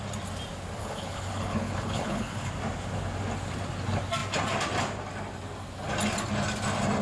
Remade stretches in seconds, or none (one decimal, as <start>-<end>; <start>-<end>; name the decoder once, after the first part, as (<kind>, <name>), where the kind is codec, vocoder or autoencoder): 0.8-2.5 (codec, HILCodec)